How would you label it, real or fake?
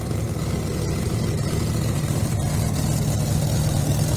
real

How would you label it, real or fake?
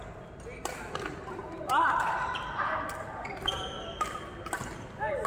fake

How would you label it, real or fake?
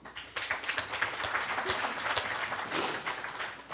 real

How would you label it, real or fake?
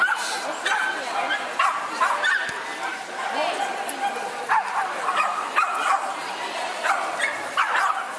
real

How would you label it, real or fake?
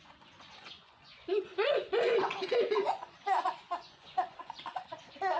fake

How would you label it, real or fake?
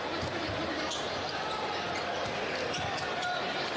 real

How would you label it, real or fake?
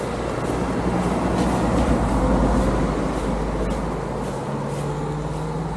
real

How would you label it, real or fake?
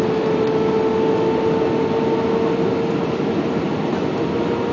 real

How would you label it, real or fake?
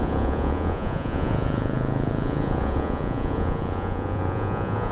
fake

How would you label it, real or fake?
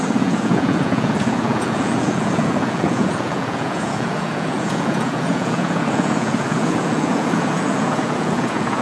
fake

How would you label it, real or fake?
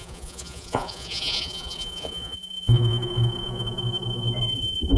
fake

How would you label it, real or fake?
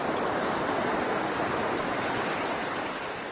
real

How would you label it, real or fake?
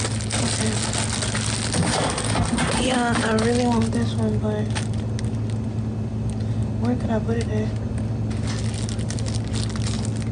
real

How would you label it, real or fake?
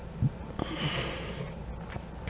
real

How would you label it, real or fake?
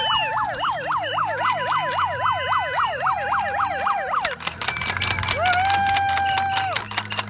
real